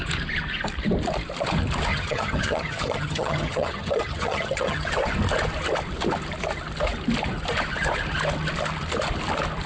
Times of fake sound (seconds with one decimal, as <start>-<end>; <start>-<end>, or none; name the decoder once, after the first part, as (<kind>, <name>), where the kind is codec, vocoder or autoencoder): 1.9-4.9 (vocoder, HiFi-GAN)